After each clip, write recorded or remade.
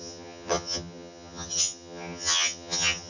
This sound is remade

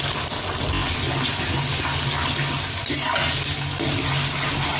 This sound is recorded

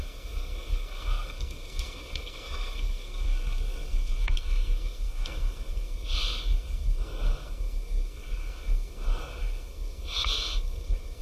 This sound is remade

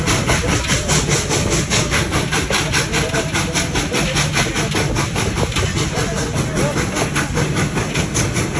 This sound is recorded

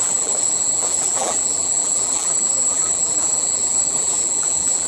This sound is remade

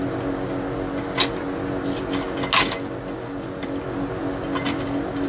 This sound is recorded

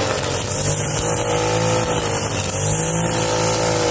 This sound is recorded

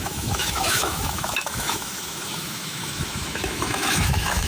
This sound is remade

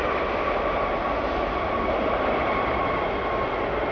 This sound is recorded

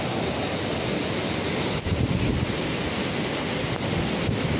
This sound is recorded